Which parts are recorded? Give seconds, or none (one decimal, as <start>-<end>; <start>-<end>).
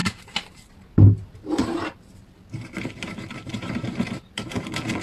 0.7-1.6; 4.6-5.0